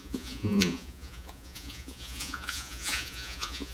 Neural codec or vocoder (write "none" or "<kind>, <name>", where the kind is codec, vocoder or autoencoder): vocoder, Vocos